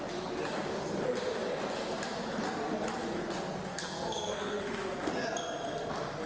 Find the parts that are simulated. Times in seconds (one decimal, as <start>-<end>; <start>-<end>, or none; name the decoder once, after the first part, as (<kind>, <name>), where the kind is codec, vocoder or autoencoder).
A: 3.7-4.6 (codec, SNAC)